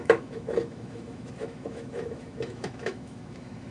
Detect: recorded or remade remade